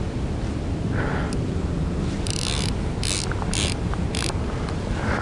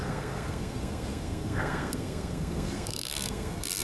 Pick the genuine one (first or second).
first